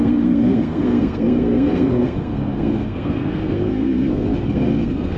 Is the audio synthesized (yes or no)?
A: yes